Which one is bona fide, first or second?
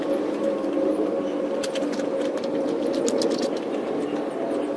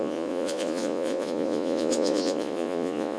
first